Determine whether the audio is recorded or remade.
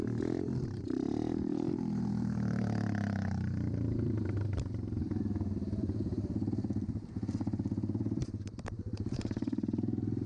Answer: remade